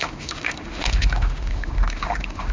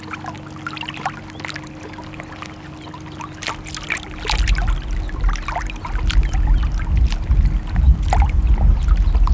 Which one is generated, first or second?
first